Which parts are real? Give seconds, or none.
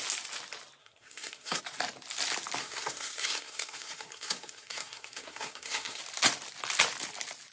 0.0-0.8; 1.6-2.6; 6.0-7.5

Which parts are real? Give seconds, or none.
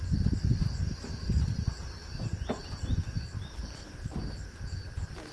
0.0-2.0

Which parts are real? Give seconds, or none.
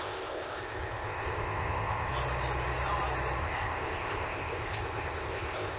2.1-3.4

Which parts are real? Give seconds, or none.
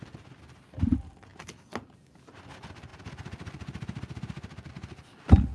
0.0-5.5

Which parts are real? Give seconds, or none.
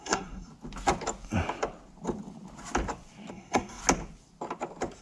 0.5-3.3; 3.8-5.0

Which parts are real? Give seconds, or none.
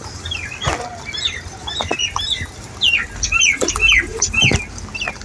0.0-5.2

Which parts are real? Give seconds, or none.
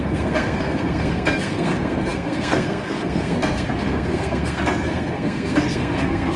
none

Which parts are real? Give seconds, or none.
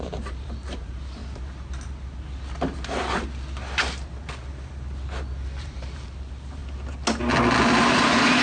1.2-5.6; 6.6-7.9